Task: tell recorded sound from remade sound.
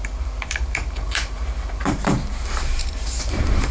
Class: remade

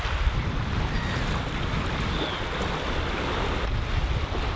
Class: recorded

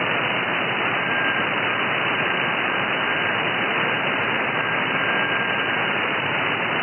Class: remade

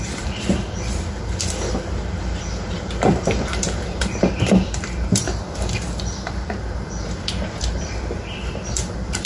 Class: remade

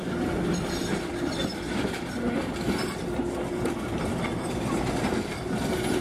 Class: remade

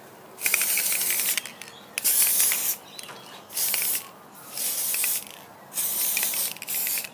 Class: recorded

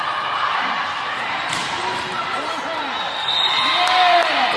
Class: remade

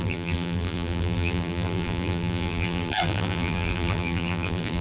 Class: remade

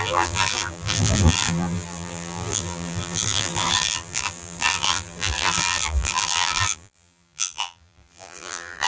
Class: remade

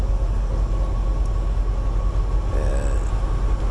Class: recorded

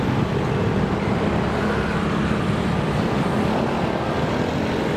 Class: recorded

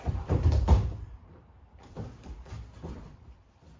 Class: remade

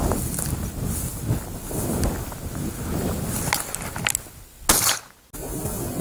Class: recorded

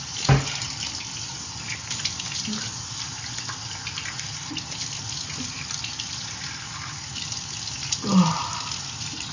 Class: recorded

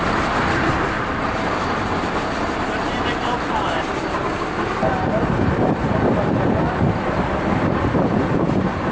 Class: remade